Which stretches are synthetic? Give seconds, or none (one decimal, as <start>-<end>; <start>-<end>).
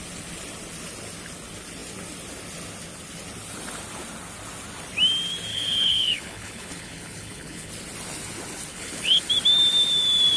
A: 5.5-7.7; 8.7-9.2